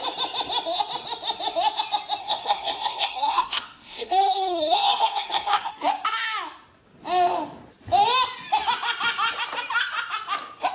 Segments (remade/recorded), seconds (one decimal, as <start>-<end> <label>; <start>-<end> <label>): 0.0-2.2 recorded; 2.2-5.7 remade; 5.7-10.7 recorded